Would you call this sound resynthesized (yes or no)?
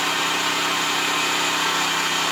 no